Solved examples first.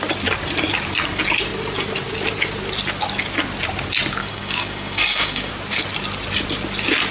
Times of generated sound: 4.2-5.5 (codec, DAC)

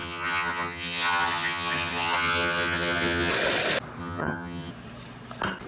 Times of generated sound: 0.0-3.3 (vocoder, HiFi-GAN); 4.0-4.7

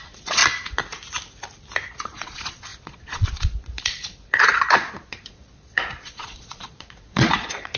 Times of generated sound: 0.0-0.4 (vocoder, Vocos); 1.9-7.8

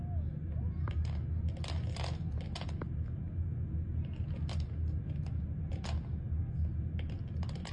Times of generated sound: none

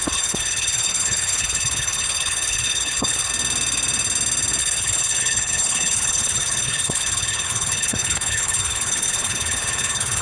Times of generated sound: 0.0-3.3 (codec, HILCodec); 4.6-10.2

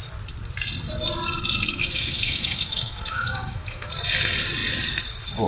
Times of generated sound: 1.7-3.9 (autoencoder, DAC-VAE)